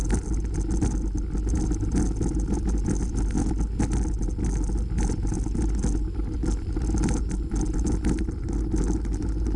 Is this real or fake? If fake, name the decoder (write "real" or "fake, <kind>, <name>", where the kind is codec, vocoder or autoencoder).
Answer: real